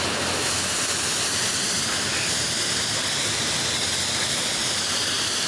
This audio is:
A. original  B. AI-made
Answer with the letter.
A